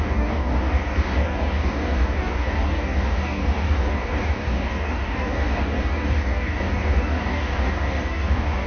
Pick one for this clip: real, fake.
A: fake